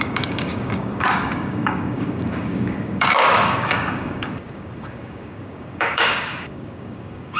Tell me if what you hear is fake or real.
fake